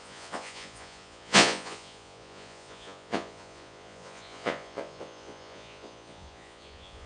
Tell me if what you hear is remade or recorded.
remade